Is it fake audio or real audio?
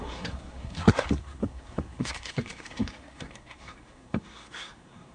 fake